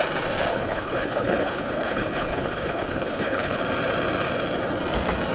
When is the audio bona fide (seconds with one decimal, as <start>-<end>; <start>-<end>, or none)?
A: 0.0-0.5; 3.6-5.3

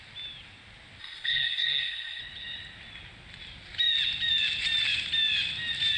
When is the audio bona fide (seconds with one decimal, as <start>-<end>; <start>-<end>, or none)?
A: 0.0-1.0; 2.2-6.0

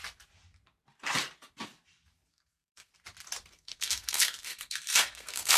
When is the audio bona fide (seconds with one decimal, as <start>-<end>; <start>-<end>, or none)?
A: 0.0-2.3; 2.9-3.5

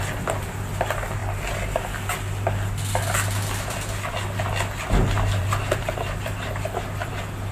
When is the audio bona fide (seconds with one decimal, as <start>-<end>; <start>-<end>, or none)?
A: 0.0-5.4; 6.5-7.5

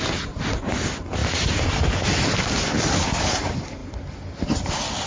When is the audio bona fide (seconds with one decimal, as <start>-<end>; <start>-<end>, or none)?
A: 0.0-5.1

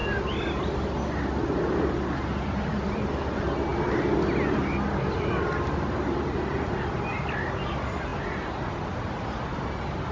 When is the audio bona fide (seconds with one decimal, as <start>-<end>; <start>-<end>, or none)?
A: 0.0-10.1

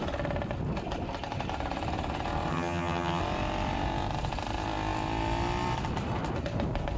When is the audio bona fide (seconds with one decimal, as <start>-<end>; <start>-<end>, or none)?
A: 0.0-2.5; 3.2-7.0